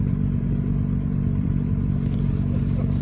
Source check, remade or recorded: remade